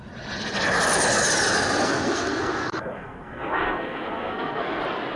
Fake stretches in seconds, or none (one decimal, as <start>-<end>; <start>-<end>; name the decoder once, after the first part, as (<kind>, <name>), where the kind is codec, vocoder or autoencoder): 1.8-4.8 (codec, SNAC)

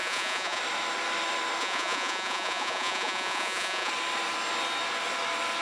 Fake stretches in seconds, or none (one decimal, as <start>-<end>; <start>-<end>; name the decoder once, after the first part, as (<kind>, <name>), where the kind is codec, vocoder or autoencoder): 0.0-0.6 (vocoder, Vocos); 1.6-3.9

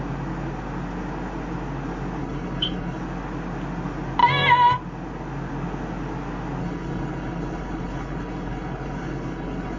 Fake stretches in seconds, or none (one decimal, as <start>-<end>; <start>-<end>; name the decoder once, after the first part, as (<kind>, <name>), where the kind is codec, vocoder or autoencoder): 2.2-3.0 (codec, HILCodec); 6.6-9.8

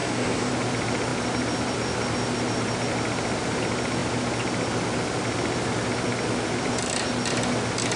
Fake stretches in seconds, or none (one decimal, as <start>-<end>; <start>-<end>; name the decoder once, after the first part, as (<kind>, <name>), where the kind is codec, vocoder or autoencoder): 0.0-0.5 (codec, DAC)

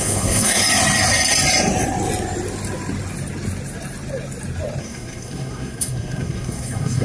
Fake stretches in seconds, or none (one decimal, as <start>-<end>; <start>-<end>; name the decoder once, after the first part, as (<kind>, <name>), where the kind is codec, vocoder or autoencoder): 0.0-0.6 (codec, SNAC); 4.8-7.0

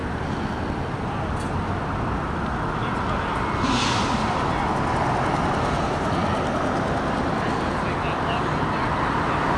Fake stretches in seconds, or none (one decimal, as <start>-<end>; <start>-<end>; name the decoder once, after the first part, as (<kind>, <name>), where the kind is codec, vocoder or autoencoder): none

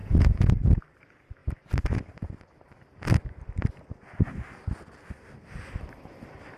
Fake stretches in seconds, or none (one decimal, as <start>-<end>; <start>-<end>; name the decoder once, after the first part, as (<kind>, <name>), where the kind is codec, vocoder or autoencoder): 0.0-0.5 (vocoder, Vocos)